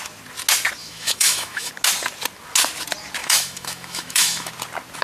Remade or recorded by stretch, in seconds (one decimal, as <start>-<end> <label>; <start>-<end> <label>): 0.0-0.8 recorded; 0.8-1.7 remade; 1.7-3.2 recorded; 3.2-4.5 remade; 4.5-5.0 recorded

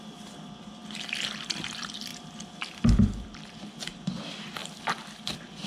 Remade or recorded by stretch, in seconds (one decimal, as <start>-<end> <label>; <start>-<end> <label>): 0.0-0.8 recorded; 0.8-1.4 remade; 1.4-2.1 recorded; 2.1-3.6 remade; 3.6-4.6 recorded; 4.6-5.7 remade

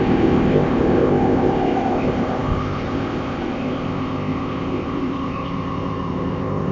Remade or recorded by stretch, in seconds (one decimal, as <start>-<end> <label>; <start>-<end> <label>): 0.0-6.7 remade

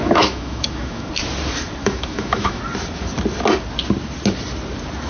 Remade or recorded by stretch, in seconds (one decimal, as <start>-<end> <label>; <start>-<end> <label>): 0.0-1.1 remade; 1.1-1.8 recorded; 1.8-2.6 remade; 2.6-5.1 recorded

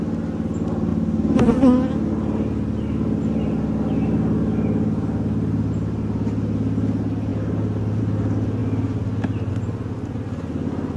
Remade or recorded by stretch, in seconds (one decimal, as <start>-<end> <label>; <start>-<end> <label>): 0.0-11.0 recorded

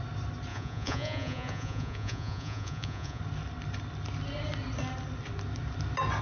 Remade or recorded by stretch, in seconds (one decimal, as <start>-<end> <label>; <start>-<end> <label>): 0.0-0.5 recorded; 0.5-3.2 remade; 3.2-6.2 recorded

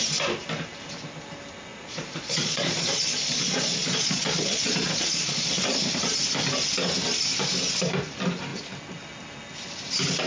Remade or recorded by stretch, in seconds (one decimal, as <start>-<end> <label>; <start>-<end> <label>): 0.0-1.7 recorded; 1.7-5.6 remade; 5.6-10.3 recorded